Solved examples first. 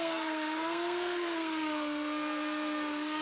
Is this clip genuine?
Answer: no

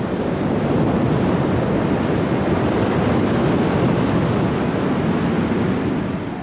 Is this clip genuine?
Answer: yes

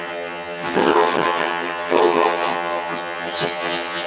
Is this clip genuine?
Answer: no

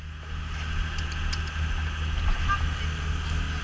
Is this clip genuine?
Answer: yes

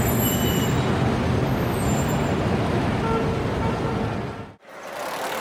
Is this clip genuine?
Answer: yes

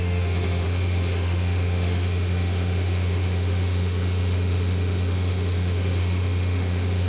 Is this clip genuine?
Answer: no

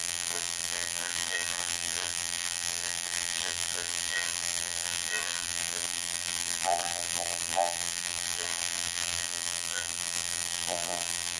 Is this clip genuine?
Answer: no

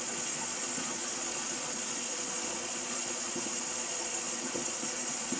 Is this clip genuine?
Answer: no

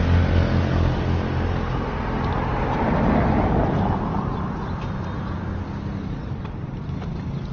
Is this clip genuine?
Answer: yes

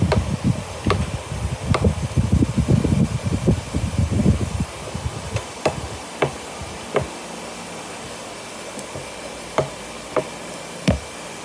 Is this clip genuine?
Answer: yes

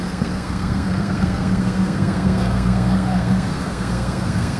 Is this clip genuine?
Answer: no